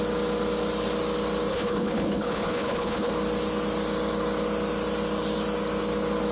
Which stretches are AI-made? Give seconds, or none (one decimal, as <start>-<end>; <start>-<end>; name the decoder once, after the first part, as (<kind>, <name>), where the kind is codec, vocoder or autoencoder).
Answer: 1.5-3.1 (codec, HILCodec)